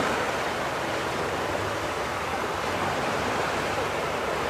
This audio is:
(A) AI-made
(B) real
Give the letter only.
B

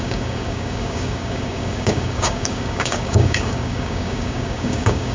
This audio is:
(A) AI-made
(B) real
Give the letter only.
A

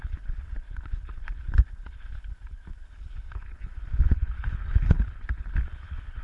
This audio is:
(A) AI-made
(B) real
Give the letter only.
A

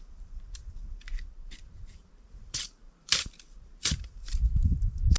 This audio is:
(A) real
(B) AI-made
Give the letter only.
B